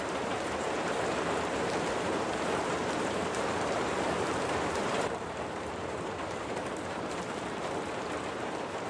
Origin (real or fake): fake